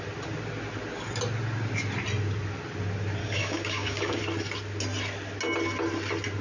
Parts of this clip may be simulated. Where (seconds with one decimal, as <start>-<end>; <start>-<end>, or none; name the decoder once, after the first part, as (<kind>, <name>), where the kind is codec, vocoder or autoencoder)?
3.2-4.2 (codec, DAC)